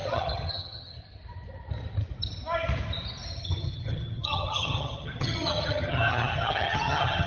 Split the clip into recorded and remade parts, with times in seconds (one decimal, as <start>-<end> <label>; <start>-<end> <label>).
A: 0.0-1.0 remade; 1.0-3.4 recorded; 3.4-7.3 remade